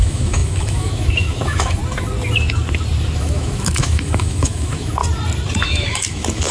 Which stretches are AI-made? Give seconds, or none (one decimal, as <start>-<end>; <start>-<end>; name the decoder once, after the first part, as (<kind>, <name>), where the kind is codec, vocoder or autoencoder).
0.0-1.8 (autoencoder, DAC-VAE); 3.2-5.0; 5.6-6.5